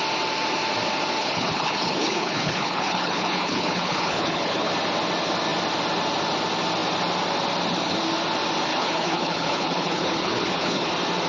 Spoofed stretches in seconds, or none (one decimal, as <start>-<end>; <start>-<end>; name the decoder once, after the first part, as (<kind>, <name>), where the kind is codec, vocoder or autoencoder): 1.2-4.7 (codec, HILCodec); 8.7-10.9